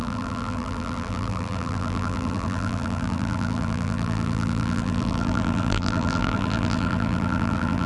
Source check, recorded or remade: remade